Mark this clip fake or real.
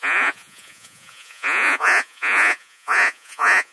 fake